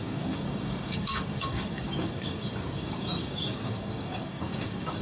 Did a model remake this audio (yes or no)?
yes